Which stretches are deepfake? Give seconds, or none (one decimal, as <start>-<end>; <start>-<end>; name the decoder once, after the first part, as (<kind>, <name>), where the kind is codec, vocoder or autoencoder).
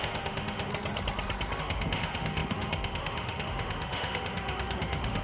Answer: 0.0-0.7 (autoencoder, DAC-VAE); 1.6-5.2